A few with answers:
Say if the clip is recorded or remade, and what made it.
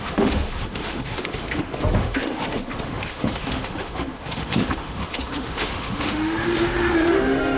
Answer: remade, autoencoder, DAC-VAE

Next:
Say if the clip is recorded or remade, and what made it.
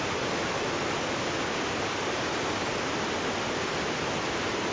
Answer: recorded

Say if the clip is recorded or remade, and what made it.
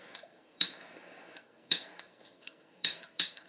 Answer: remade, codec, SNAC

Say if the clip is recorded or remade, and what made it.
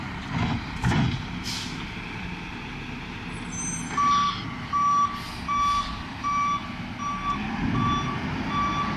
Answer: recorded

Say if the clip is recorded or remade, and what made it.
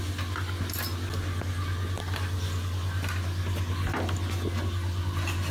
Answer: recorded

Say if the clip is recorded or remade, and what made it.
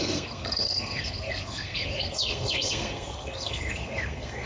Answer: remade, codec, SNAC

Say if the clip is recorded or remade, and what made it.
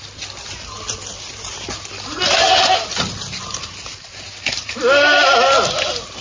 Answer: recorded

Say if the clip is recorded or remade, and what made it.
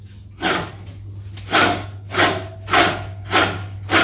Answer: recorded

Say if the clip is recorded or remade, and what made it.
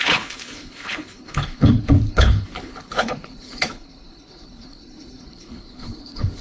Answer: remade, codec, HILCodec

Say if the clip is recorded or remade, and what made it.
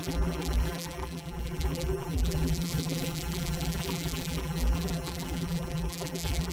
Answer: remade, vocoder, BigVGAN v2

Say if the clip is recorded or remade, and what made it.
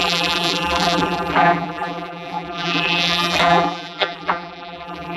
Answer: remade, vocoder, BigVGAN v2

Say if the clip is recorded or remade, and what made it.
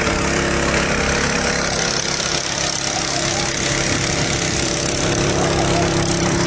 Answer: remade, vocoder, BigVGAN v2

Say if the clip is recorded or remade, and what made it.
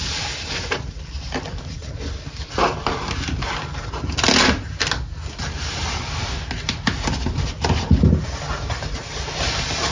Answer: recorded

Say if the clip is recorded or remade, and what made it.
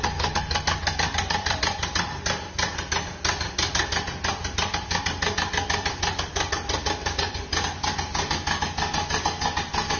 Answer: recorded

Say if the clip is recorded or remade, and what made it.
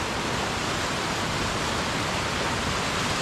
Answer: recorded